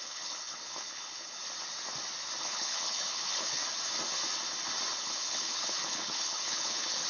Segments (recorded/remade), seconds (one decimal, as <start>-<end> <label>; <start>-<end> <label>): 0.0-1.4 remade; 1.4-2.4 recorded; 2.4-3.6 remade; 3.6-5.0 recorded; 5.0-7.1 remade